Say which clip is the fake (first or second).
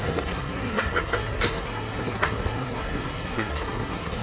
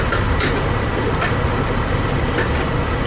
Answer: first